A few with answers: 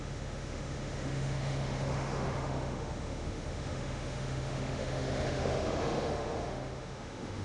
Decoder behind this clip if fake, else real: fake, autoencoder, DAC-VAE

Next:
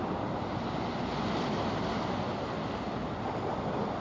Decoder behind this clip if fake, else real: real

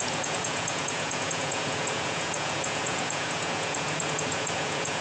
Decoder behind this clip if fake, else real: fake, vocoder, Vocos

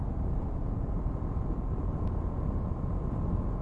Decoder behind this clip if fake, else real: real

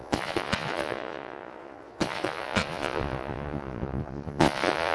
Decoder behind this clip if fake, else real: fake, vocoder, Vocos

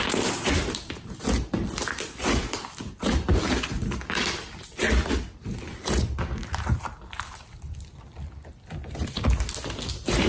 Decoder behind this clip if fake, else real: real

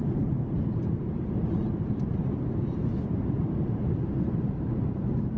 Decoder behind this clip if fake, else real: fake, vocoder, BigVGAN v2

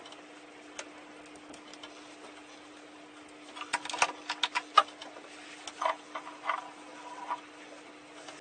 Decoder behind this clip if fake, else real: real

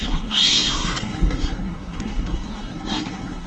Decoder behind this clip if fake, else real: fake, codec, SNAC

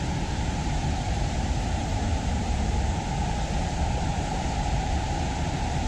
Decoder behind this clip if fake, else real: fake, vocoder, BigVGAN v2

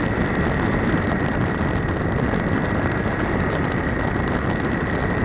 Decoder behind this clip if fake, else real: real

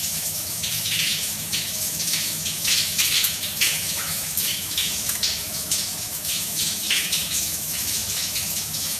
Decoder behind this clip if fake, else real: fake, autoencoder, DAC-VAE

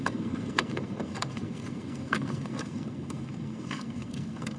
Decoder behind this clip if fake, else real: fake, codec, SNAC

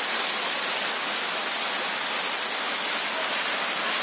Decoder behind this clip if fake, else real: real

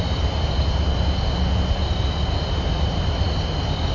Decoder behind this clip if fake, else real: real